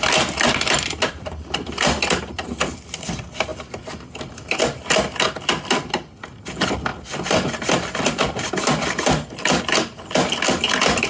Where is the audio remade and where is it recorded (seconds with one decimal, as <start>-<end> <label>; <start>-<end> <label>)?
0.0-11.1 recorded